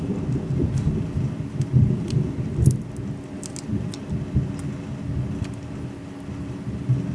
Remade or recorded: recorded